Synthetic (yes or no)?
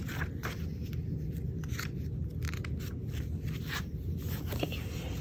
no